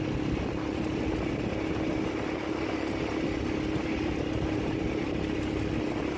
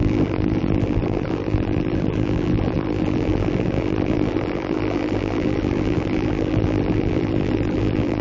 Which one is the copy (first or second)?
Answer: second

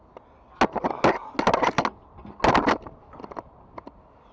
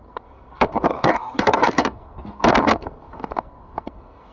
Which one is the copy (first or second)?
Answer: second